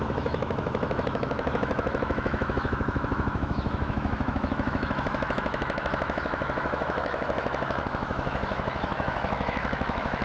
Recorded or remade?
remade